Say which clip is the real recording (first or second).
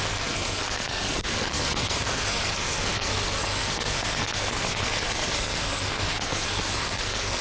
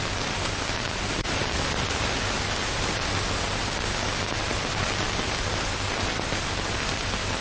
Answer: second